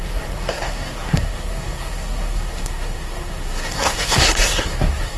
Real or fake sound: fake